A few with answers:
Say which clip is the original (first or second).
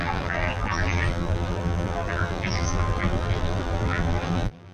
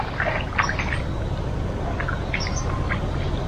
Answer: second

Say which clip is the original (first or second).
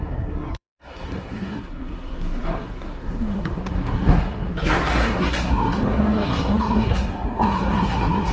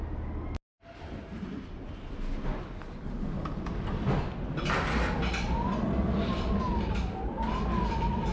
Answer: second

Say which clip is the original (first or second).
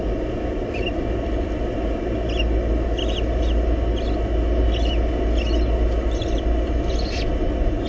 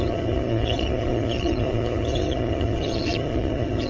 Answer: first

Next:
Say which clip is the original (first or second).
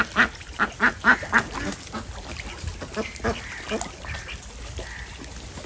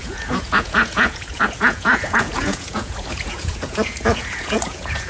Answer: first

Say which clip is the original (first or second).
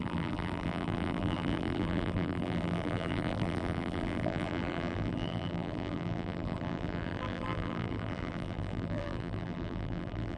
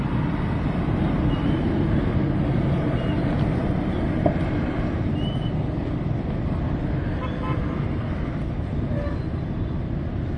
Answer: second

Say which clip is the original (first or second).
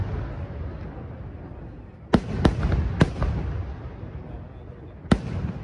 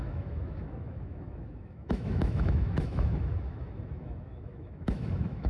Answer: first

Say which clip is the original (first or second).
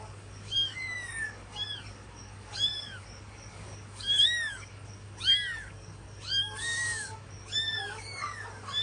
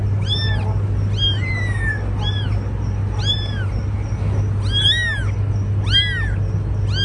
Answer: second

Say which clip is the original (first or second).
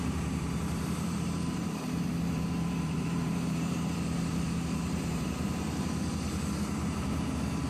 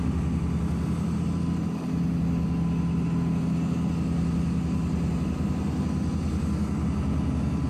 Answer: second